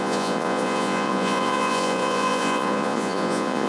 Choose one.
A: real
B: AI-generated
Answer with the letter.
B